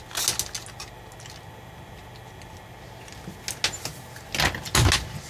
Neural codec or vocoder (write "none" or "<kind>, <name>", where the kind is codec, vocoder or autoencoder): none